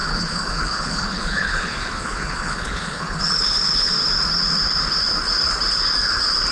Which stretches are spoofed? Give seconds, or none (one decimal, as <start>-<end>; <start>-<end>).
0.0-3.9